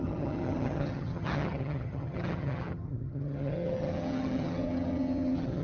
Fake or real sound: fake